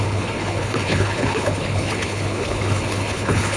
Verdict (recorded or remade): remade